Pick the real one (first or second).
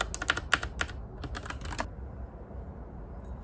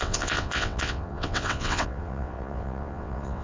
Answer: first